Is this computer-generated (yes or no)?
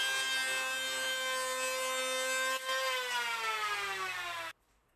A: no